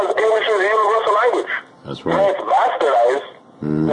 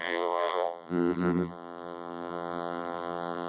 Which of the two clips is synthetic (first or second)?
second